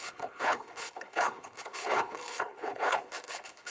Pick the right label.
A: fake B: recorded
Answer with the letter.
A